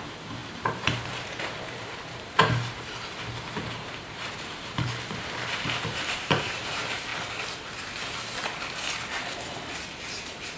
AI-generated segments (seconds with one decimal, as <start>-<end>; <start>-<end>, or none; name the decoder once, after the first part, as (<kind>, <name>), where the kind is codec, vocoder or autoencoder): 0.0-7.1 (vocoder, BigVGAN v2); 10.1-10.6